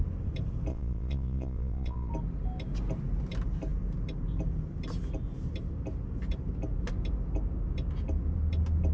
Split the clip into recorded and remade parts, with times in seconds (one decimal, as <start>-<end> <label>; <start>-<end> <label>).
0.0-0.7 recorded; 0.7-2.1 remade; 2.1-8.9 recorded